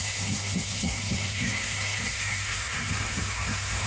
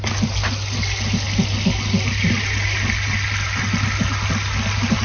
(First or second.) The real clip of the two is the second